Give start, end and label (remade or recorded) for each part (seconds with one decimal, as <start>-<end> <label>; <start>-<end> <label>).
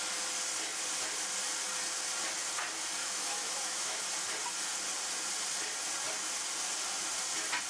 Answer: 0.0-3.0 recorded; 3.0-4.0 remade; 4.0-7.7 recorded